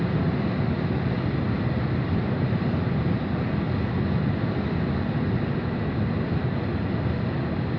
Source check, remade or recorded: recorded